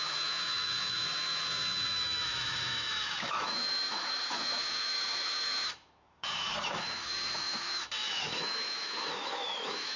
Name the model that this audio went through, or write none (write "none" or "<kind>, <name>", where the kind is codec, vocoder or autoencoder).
autoencoder, DAC-VAE